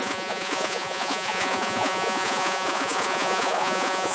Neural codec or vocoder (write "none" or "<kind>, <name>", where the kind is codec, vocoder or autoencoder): vocoder, Vocos